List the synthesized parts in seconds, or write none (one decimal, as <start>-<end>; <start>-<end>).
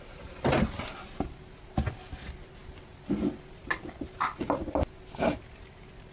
none